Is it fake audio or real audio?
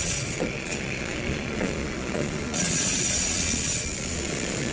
fake